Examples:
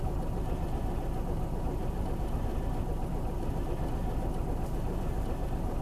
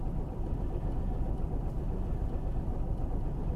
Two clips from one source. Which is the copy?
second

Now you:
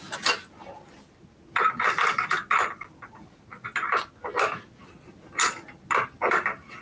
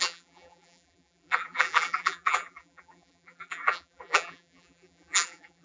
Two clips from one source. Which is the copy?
second